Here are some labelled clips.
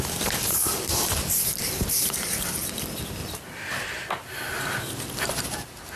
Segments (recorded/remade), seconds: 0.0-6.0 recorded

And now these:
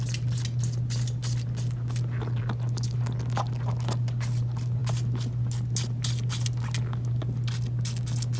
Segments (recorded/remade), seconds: 0.0-8.4 recorded

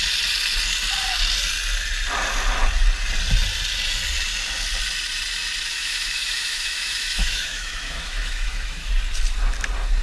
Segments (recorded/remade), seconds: 0.0-5.7 recorded; 5.7-8.9 remade; 8.9-10.0 recorded

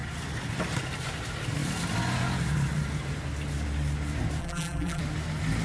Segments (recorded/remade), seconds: 0.0-4.4 recorded; 4.4-5.0 remade; 5.0-5.6 recorded

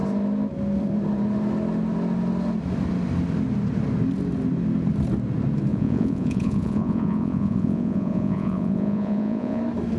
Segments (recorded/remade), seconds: 0.0-5.7 recorded; 5.7-9.6 remade; 9.6-10.0 recorded

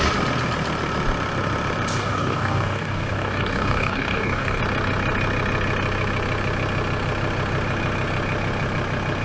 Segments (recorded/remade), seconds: 0.0-2.0 recorded; 2.0-4.6 remade; 4.6-9.2 recorded

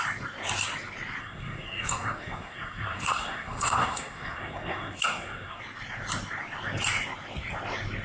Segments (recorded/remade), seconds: 0.0-1.2 recorded; 1.2-5.6 remade; 5.6-8.0 recorded

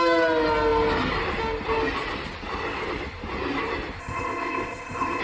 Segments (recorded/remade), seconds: 0.0-4.0 recorded; 4.0-5.2 remade